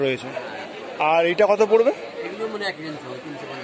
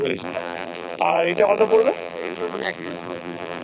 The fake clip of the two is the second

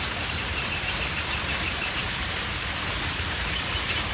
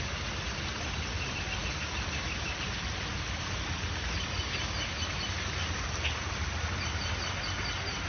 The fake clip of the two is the first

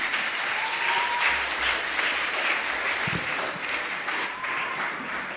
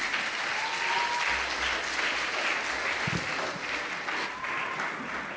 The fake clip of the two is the first